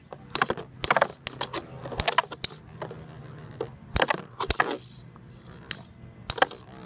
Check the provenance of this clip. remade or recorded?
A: recorded